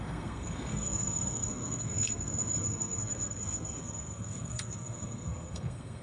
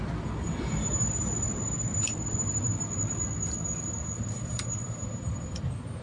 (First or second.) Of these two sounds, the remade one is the first